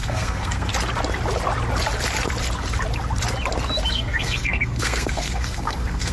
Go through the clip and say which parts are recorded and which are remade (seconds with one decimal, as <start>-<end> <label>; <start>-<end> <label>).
0.0-0.7 remade; 0.7-3.9 recorded; 3.9-6.1 remade